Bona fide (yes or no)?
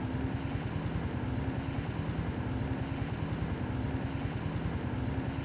yes